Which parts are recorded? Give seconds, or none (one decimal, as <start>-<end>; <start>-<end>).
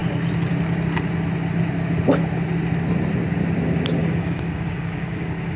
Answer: 0.0-4.0